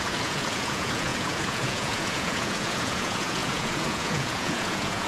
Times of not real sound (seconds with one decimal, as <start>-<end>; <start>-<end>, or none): 0.0-5.1